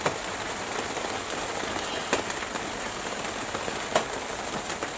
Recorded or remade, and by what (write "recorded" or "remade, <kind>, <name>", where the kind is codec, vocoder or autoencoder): recorded